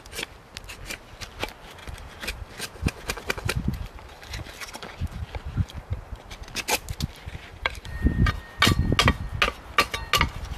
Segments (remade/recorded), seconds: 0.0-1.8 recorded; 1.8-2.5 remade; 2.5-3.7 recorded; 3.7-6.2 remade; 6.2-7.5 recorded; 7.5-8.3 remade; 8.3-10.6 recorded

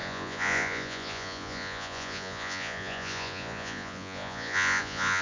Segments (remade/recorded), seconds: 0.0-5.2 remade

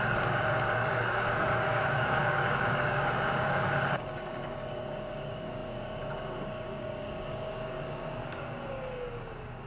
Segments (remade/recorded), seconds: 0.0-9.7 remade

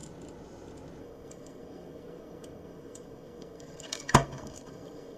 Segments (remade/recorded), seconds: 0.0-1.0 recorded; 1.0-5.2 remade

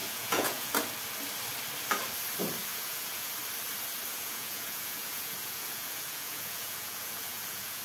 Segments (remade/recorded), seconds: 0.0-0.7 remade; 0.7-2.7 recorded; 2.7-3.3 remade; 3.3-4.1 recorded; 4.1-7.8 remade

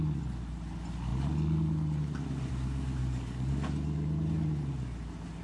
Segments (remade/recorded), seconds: 0.0-3.0 recorded; 3.0-3.5 remade; 3.5-5.4 recorded

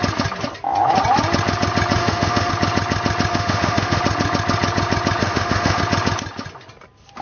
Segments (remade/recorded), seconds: 0.0-2.0 recorded; 2.0-2.5 remade; 2.5-3.3 recorded; 3.3-4.0 remade; 4.0-5.2 recorded; 5.2-5.8 remade; 5.8-7.2 recorded

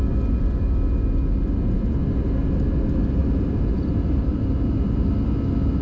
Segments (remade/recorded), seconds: 0.0-3.2 recorded; 3.2-5.1 remade; 5.1-5.8 recorded